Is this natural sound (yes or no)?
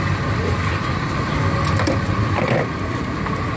yes